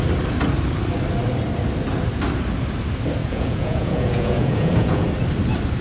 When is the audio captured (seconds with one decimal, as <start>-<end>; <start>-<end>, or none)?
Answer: 0.0-3.2; 5.1-5.8